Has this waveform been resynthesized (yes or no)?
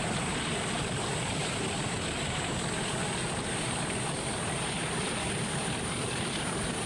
yes